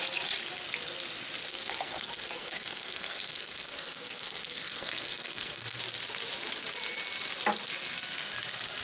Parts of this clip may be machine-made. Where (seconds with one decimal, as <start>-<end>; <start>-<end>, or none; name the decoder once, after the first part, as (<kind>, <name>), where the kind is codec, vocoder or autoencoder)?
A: 1.5-5.8 (codec, SNAC)

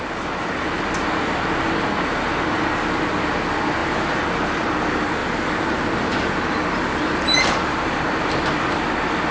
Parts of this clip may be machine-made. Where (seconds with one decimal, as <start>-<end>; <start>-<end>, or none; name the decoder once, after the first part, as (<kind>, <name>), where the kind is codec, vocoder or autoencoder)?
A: 3.8-4.3 (vocoder, BigVGAN v2); 5.2-8.2

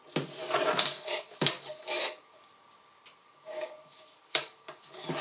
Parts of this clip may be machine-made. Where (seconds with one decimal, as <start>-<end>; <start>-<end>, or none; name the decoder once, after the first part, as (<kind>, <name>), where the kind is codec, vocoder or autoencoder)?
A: 0.4-2.5 (codec, DAC); 3.2-5.2

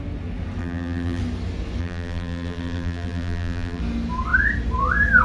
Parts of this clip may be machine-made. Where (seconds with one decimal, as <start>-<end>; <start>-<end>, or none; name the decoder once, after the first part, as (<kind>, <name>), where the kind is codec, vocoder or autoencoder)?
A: 0.6-1.2 (vocoder, BigVGAN v2); 1.8-3.8

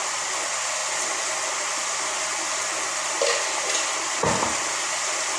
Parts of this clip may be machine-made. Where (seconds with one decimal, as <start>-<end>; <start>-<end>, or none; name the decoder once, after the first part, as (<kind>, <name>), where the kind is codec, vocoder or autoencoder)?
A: none

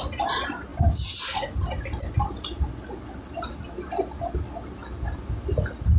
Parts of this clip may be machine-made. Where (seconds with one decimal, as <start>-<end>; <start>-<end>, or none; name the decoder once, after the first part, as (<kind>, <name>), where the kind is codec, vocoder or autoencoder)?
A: none